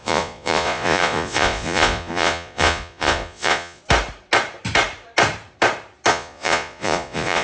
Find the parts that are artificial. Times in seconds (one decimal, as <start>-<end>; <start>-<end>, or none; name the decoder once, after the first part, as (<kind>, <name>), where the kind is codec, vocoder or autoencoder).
0.0-3.8 (vocoder, Vocos); 6.1-7.4